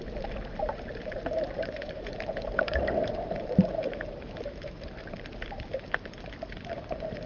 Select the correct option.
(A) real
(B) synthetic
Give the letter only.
B